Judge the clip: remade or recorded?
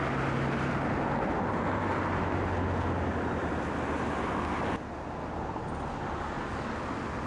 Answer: recorded